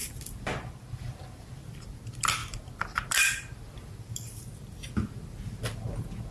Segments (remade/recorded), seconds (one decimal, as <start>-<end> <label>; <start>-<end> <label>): 0.0-6.3 recorded